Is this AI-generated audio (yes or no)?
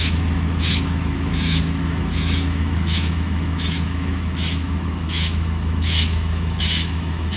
yes